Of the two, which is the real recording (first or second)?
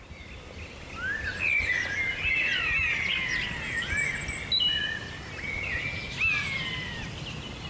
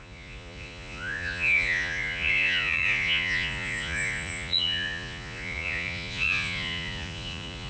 first